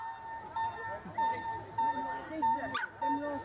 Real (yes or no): yes